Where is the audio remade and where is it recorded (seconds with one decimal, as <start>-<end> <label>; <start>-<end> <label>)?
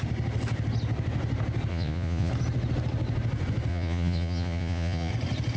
0.0-1.7 recorded; 1.7-2.3 remade; 2.3-3.7 recorded; 3.7-5.1 remade; 5.1-5.6 recorded